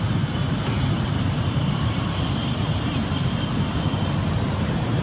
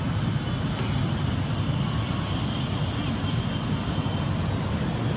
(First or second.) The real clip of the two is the second